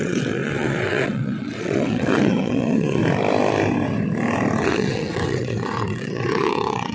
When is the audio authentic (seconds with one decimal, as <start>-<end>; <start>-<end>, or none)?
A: 3.0-4.6